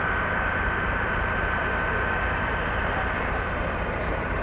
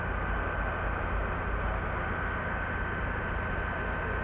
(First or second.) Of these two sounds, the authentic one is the second